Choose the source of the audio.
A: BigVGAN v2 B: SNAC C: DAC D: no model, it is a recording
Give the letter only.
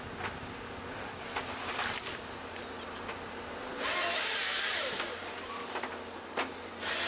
D